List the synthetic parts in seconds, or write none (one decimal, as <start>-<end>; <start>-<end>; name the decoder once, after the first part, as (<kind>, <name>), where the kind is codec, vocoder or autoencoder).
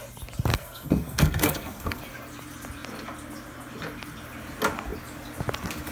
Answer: 0.5-2.0 (codec, SNAC)